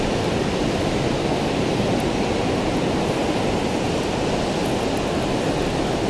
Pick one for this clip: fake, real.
real